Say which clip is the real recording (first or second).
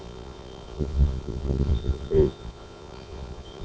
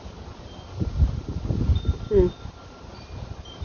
second